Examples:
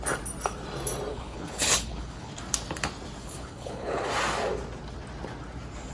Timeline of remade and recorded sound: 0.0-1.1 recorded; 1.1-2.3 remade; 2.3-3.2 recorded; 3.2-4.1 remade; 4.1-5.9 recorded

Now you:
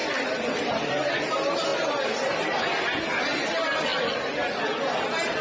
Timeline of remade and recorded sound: 0.0-1.2 remade; 1.2-1.7 recorded; 1.7-2.6 remade; 2.6-5.4 recorded